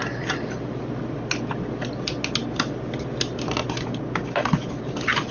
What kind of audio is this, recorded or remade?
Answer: recorded